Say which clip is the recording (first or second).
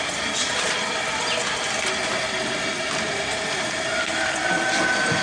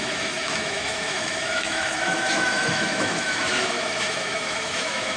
first